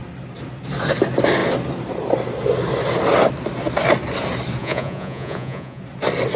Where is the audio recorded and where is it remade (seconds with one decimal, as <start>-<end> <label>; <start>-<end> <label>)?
0.0-4.6 recorded; 4.6-5.8 remade; 5.8-6.4 recorded